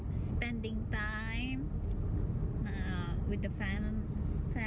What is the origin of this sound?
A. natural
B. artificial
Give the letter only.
A